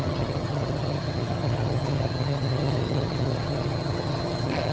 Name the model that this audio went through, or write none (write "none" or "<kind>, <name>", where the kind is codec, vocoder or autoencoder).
vocoder, HiFi-GAN